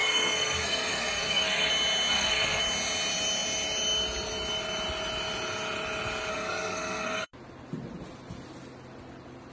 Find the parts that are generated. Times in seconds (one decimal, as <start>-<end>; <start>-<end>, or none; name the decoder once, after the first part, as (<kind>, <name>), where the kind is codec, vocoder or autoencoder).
0.0-1.7 (codec, SNAC); 2.1-2.6; 6.3-7.3